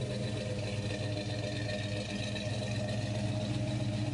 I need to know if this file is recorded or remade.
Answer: recorded